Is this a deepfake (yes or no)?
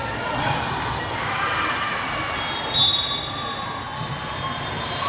no